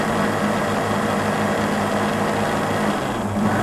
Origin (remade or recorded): recorded